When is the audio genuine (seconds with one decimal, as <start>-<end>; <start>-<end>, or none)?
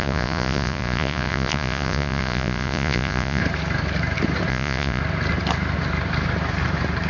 3.4-4.5; 5.0-7.1